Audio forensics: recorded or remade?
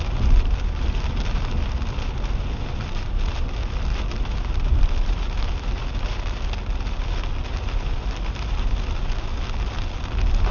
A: recorded